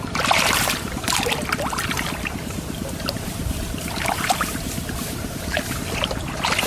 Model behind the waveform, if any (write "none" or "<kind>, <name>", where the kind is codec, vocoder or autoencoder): vocoder, BigVGAN v2